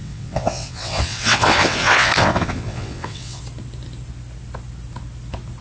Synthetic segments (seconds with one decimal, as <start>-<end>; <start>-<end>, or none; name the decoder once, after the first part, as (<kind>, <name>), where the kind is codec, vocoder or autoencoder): 0.0-3.4 (vocoder, WaveNeXt)